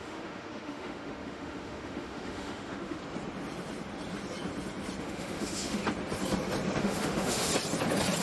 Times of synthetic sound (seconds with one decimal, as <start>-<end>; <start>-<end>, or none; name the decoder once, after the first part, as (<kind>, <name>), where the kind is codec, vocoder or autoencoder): 0.0-3.0 (autoencoder, DAC-VAE); 5.0-5.8; 6.8-7.5